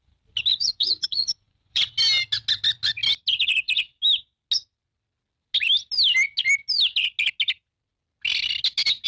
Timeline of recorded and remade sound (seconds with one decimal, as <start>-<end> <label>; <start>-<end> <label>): 0.0-0.5 recorded; 0.5-1.9 remade; 1.9-9.1 recorded